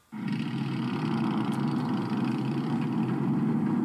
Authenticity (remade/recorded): recorded